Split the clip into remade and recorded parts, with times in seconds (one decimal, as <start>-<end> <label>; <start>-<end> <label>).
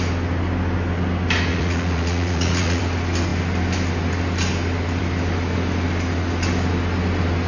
0.0-1.5 recorded; 1.5-2.8 remade; 2.8-7.5 recorded